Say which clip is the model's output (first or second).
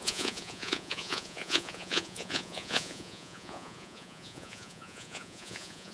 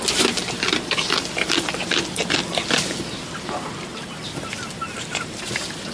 first